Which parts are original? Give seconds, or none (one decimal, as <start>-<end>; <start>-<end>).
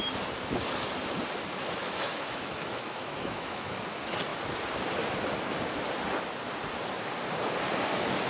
0.0-1.8; 3.7-8.3